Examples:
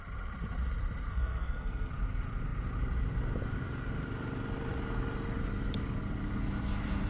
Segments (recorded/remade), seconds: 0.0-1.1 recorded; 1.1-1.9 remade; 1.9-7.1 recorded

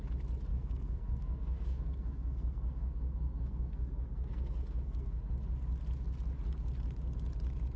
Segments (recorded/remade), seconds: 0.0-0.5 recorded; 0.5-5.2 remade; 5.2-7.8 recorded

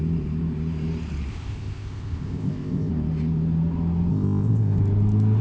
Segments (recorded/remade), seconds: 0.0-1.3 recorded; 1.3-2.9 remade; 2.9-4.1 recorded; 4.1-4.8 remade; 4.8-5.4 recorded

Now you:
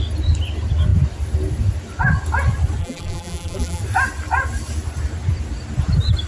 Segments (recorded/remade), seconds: 0.0-2.8 recorded; 2.8-3.8 remade; 3.8-6.3 recorded